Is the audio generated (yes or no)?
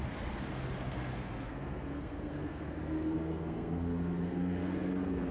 yes